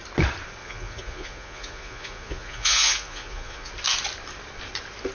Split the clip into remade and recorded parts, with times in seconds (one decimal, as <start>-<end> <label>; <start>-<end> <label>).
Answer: 0.0-0.6 recorded; 0.6-3.7 remade; 3.7-5.1 recorded